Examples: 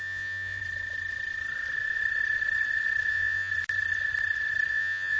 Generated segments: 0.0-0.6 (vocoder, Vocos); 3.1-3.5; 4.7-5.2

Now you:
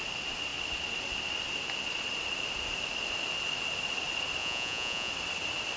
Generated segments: 4.4-5.1 (vocoder, Vocos)

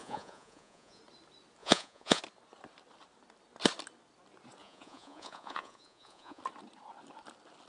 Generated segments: 0.0-1.0 (vocoder, Vocos); 1.6-2.2; 4.6-6.4

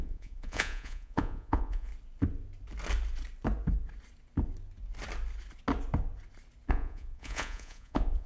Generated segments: 0.0-1.9 (vocoder, Vocos); 6.7-8.3